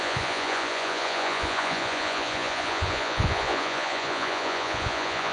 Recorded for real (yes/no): no